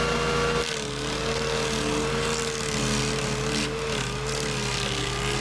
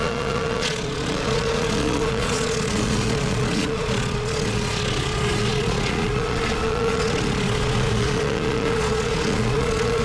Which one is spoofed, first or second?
second